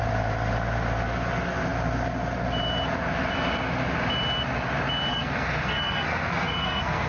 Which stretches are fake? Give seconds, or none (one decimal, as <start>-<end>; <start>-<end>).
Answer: 5.1-7.1

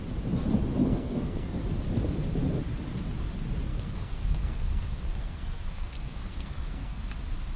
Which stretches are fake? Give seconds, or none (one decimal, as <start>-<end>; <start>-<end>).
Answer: 0.8-1.6; 3.7-7.0

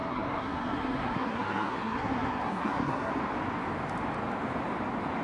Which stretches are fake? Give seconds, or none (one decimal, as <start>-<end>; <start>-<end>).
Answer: 0.0-3.1

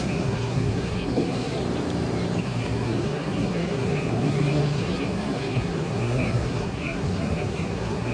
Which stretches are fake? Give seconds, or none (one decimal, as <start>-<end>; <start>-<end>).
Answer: 0.0-1.6; 2.4-8.1